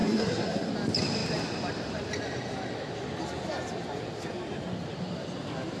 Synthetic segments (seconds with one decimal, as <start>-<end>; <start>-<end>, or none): 0.0-0.7